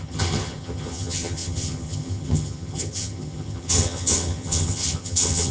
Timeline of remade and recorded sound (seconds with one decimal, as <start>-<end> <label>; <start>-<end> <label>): 0.0-5.5 remade